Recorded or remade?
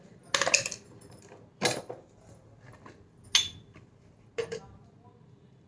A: recorded